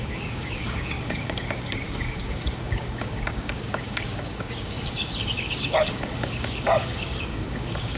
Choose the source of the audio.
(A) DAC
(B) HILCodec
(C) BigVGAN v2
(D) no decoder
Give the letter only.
A